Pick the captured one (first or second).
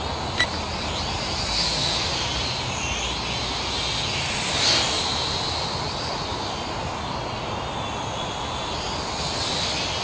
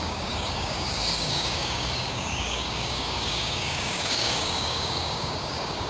first